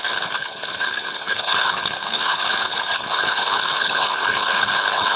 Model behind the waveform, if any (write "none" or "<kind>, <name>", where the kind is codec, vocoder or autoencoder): codec, HILCodec